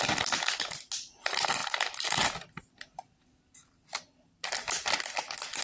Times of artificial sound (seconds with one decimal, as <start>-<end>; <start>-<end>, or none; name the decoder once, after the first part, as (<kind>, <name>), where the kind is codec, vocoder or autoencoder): none